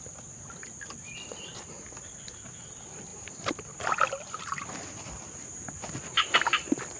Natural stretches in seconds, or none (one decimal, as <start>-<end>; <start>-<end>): 0.0-7.0